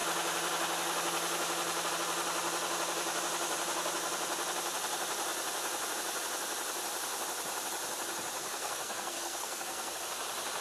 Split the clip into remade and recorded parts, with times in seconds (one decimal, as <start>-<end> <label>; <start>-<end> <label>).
0.0-8.4 recorded; 8.4-10.0 remade; 10.0-10.6 recorded